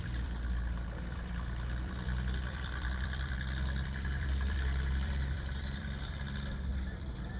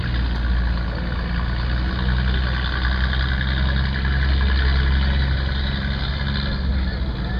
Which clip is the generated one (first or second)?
first